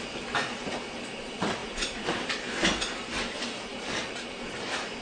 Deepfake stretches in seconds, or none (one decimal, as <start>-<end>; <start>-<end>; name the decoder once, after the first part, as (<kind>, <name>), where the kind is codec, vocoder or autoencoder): 0.0-3.7 (vocoder, BigVGAN v2); 4.2-5.0